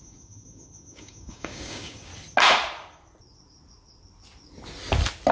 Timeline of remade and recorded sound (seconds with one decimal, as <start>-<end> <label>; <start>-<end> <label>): 0.0-2.1 remade; 2.1-5.3 recorded